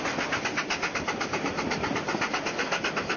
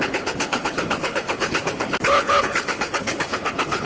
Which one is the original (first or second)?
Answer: first